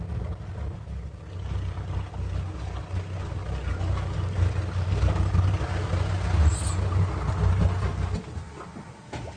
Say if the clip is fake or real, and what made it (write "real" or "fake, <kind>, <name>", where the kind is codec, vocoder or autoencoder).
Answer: real